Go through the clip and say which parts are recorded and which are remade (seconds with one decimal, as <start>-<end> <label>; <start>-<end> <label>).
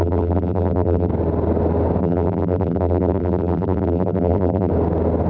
0.0-1.1 remade; 1.1-2.0 recorded; 2.0-4.7 remade; 4.7-5.3 recorded